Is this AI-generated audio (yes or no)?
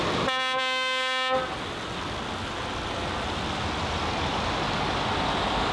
no